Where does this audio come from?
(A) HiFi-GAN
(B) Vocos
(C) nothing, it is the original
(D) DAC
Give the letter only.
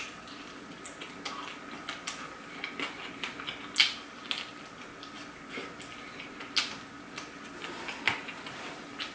C